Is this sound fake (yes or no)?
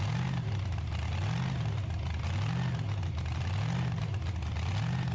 no